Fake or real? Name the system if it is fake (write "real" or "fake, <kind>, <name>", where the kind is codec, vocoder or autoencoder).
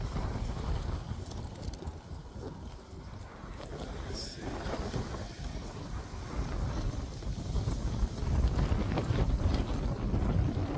real